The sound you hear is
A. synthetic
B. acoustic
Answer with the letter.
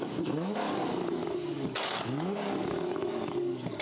A